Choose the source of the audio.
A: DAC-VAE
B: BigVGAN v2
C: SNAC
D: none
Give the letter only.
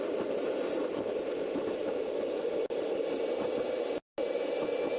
D